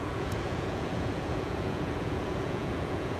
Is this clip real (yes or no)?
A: no